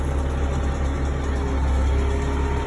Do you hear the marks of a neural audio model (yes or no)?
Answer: no